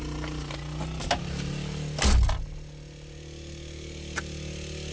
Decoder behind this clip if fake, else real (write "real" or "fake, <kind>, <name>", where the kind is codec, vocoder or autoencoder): real